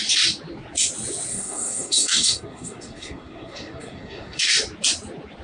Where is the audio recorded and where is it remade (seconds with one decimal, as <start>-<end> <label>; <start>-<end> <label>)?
0.0-1.3 recorded; 1.3-4.5 remade; 4.5-5.4 recorded

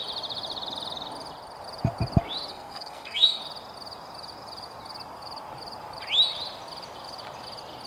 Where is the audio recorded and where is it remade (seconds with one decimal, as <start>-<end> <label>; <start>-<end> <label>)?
0.0-2.5 recorded; 2.5-3.4 remade; 3.4-7.9 recorded

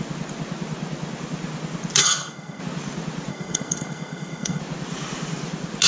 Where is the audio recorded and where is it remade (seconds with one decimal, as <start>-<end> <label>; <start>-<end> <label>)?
0.0-2.0 recorded; 2.0-2.6 remade; 2.6-3.3 recorded; 3.3-4.6 remade; 4.6-5.9 recorded

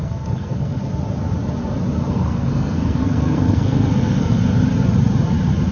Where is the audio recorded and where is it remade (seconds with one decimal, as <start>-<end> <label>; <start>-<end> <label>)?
0.0-0.8 remade; 0.8-2.1 recorded; 2.1-4.4 remade; 4.4-5.7 recorded

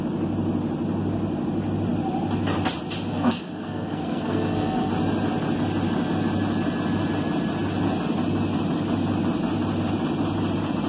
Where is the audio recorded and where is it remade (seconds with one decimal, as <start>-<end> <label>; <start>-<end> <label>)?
0.0-3.1 recorded; 3.1-4.9 remade; 4.9-10.9 recorded

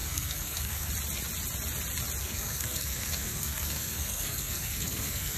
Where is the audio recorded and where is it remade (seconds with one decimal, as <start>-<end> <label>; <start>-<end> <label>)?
0.0-0.9 remade; 0.9-2.2 recorded; 2.2-5.4 remade